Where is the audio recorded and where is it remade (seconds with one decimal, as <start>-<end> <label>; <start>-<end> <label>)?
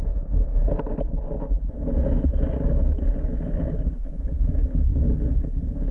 0.0-0.6 remade; 0.6-4.0 recorded; 4.0-4.9 remade; 4.9-5.9 recorded